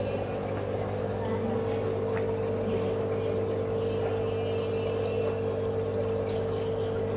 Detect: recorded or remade recorded